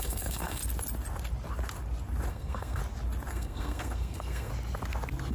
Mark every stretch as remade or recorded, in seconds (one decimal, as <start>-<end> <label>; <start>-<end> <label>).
0.0-0.6 remade; 0.6-2.3 recorded; 2.3-2.8 remade; 2.8-3.3 recorded; 3.3-4.5 remade; 4.5-5.3 recorded